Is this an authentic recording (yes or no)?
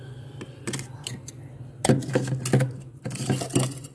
yes